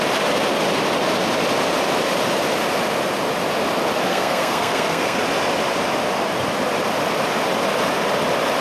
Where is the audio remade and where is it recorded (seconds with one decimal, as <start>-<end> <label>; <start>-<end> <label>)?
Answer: 0.0-4.1 recorded; 4.1-5.2 remade; 5.2-8.6 recorded